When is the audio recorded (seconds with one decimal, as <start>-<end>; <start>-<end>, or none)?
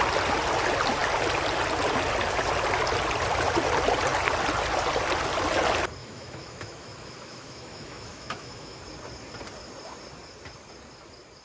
0.0-6.0; 8.8-11.4